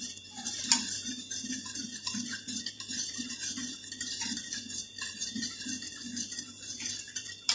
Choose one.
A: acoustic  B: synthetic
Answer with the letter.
B